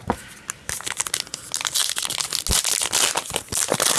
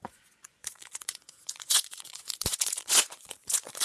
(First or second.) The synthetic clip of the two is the second